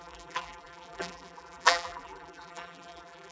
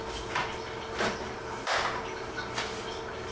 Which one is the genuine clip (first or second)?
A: second